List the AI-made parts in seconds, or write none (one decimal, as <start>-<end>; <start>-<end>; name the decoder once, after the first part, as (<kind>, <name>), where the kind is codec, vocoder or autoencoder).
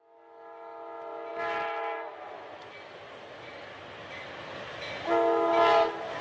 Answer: none